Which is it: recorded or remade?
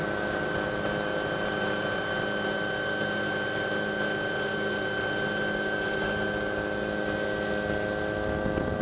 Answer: recorded